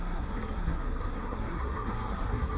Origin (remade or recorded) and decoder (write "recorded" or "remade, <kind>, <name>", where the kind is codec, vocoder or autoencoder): remade, codec, SNAC